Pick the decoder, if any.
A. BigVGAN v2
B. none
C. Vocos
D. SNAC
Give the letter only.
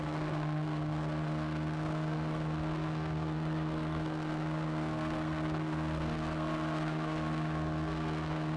D